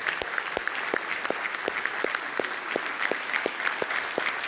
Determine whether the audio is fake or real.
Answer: real